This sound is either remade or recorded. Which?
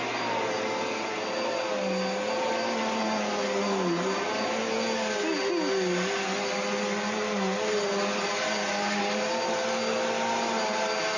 recorded